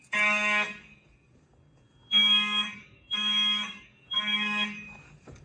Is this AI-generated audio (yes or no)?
yes